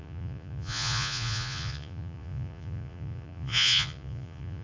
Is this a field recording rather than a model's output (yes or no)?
no